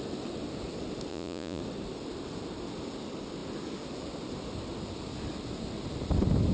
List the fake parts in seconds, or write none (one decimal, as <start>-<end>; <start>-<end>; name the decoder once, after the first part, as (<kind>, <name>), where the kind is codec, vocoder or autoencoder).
1.1-1.6 (vocoder, Vocos)